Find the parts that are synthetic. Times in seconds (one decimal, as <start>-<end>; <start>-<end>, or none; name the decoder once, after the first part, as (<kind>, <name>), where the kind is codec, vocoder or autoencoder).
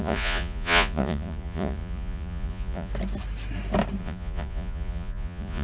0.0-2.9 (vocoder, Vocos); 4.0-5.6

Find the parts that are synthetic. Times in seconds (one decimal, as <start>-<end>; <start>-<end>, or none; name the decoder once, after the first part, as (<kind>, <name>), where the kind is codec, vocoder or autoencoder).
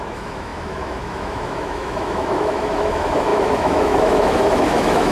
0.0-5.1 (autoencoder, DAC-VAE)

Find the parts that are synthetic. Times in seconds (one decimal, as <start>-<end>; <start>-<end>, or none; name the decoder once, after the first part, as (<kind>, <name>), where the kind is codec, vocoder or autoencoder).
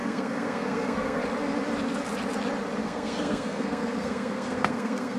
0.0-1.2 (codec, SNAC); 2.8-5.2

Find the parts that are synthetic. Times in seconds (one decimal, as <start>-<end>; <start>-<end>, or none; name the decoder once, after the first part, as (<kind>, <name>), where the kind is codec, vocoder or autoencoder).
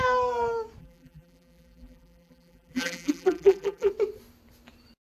0.8-3.9 (vocoder, BigVGAN v2)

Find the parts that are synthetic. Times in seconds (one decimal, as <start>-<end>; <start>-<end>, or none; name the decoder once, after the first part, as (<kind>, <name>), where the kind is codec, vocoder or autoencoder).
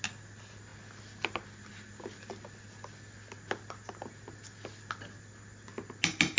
none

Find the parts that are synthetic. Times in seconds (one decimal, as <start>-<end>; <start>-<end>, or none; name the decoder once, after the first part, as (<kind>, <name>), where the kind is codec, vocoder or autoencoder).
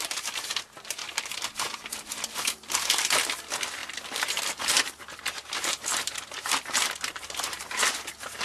0.0-1.0 (vocoder, BigVGAN v2); 1.9-8.4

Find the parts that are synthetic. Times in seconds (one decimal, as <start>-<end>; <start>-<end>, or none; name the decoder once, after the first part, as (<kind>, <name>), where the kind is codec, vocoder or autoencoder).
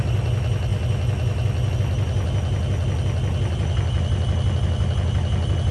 none